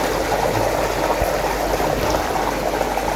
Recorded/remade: recorded